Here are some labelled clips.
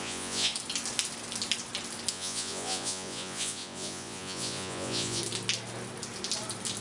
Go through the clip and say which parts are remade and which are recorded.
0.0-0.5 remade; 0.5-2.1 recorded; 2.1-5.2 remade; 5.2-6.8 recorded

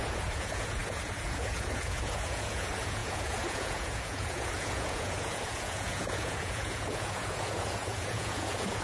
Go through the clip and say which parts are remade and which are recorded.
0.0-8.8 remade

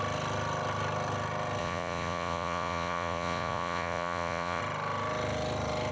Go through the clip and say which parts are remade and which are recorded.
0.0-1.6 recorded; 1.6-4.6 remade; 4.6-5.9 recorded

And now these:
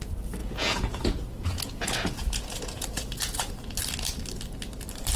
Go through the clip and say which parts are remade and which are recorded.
0.0-0.4 recorded; 0.4-3.5 remade; 3.5-5.2 recorded